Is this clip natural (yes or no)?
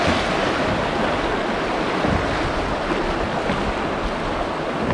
yes